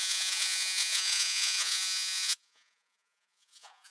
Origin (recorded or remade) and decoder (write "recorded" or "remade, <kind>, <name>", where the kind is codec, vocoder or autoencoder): remade, vocoder, Vocos